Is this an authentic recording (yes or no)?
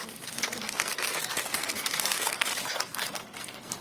no